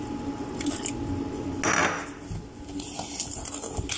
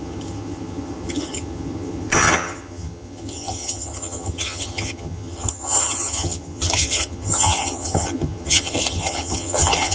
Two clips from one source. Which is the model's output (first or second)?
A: second